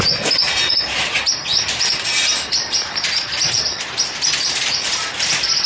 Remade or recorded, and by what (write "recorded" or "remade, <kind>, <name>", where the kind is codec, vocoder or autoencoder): recorded